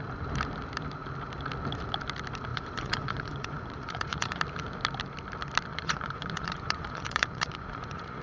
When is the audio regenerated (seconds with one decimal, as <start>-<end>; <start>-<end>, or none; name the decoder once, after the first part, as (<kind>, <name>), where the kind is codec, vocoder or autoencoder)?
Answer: 2.5-4.4 (vocoder, Vocos); 5.7-8.2